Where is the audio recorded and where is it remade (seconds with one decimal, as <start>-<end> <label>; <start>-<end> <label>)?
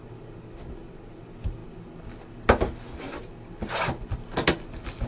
0.0-5.1 recorded